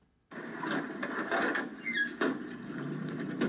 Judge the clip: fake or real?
real